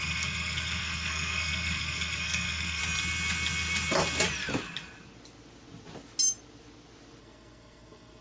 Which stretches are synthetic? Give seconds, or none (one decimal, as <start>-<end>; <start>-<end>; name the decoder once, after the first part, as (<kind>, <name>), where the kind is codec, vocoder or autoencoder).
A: 0.0-2.8 (codec, SNAC); 7.2-8.2